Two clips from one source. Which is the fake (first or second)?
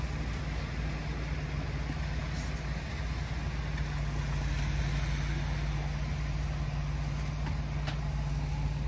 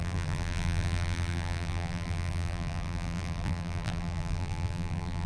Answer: second